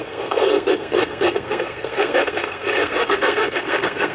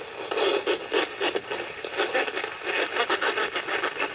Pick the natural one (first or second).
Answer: second